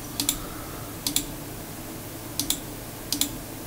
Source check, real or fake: real